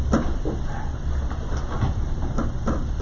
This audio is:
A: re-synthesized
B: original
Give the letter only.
B